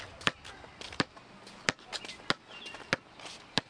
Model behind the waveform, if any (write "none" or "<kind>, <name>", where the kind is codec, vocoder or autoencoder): none